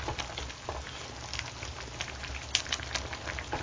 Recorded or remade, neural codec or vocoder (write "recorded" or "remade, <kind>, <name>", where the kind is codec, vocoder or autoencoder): recorded